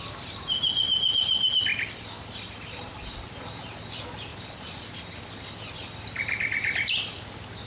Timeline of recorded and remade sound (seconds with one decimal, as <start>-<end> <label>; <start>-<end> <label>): 0.0-1.7 recorded; 1.7-3.0 remade; 3.0-4.3 recorded; 4.3-5.0 remade; 5.0-7.7 recorded